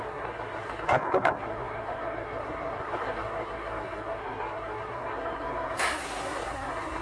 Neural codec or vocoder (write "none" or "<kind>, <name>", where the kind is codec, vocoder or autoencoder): codec, SNAC